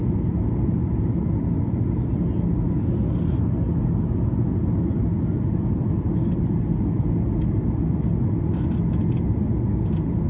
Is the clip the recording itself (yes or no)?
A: yes